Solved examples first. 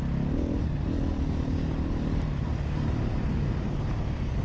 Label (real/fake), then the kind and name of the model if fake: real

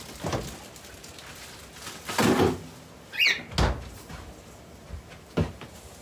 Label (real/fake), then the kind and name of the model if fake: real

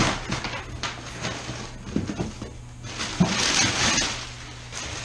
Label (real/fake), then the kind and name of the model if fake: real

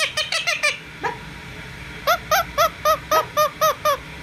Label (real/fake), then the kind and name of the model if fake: real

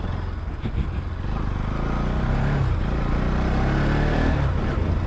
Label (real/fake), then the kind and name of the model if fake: real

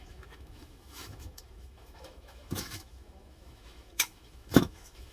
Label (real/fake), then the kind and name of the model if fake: fake, autoencoder, DAC-VAE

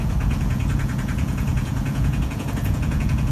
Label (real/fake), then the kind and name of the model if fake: fake, vocoder, Vocos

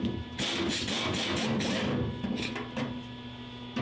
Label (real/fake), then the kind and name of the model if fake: real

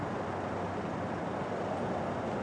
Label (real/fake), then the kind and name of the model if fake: real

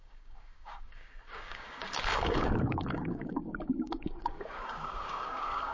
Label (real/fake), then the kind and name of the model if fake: fake, codec, DAC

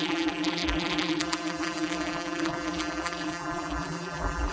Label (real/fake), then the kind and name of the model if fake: fake, vocoder, BigVGAN v2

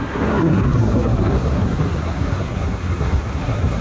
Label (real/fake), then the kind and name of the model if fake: fake, codec, SNAC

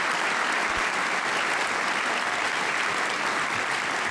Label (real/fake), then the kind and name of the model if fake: real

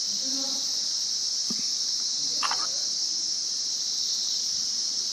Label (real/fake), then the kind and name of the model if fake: fake, vocoder, BigVGAN v2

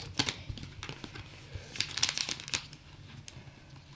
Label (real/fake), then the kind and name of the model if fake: real